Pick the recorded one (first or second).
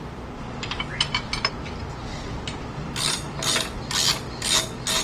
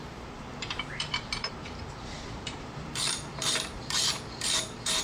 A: first